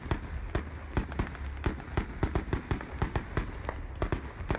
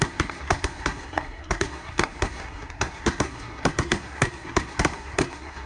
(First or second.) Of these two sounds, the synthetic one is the second